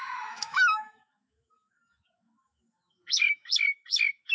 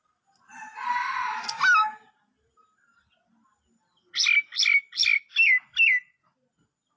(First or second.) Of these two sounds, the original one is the second